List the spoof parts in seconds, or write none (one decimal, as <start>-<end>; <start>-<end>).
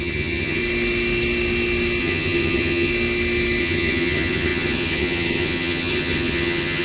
0.0-0.6; 2.0-2.9; 3.6-6.8